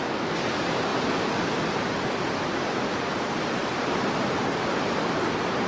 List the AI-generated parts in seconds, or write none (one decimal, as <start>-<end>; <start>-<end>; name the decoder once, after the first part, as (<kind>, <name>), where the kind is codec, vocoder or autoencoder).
0.0-0.9 (vocoder, BigVGAN v2); 2.9-5.7